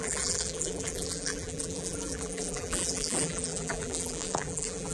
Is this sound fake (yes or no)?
yes